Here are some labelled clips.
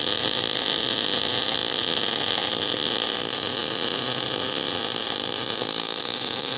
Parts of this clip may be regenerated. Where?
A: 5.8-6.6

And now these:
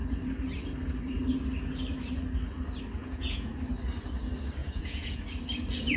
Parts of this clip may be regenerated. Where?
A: 3.0-3.5; 4.6-5.2

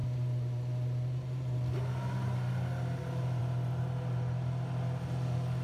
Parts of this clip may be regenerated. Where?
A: none

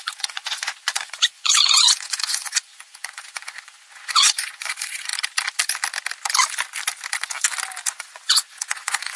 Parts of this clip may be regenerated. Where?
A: 0.0-5.1; 7.9-9.2

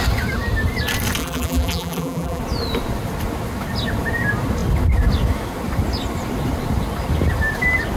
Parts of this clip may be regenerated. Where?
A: 1.2-2.4

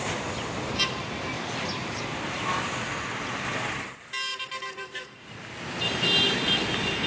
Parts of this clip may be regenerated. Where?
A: 0.0-0.8; 1.8-2.7; 4.3-5.3

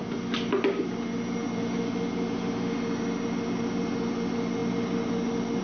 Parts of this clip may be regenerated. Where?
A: none

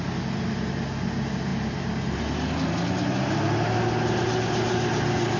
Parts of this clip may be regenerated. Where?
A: none